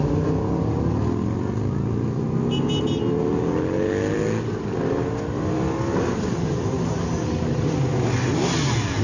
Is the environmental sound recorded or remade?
recorded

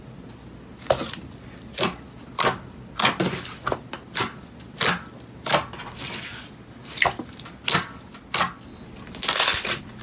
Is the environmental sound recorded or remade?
recorded